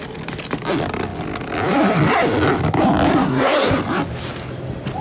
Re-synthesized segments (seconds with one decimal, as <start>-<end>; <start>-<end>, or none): 3.1-3.7